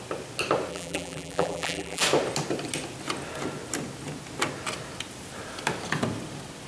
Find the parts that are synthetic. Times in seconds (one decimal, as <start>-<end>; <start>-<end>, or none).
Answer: 0.7-2.0